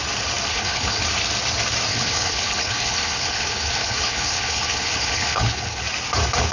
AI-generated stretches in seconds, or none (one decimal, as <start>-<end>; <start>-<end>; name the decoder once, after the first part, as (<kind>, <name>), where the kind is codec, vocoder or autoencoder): 0.5-1.0 (codec, HILCodec); 1.9-5.8